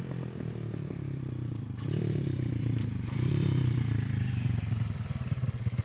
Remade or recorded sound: recorded